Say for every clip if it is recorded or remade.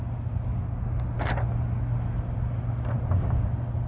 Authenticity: recorded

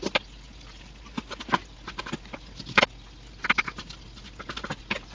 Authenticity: recorded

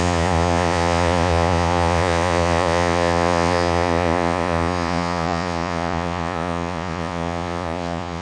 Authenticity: remade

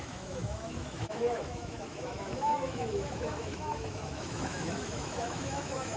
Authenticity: remade